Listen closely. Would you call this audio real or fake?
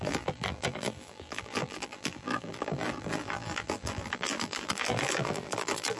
fake